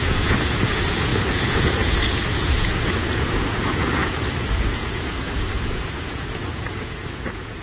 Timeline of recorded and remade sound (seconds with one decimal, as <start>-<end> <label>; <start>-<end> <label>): 0.0-7.6 remade